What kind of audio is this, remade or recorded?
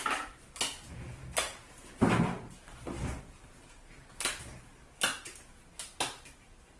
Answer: recorded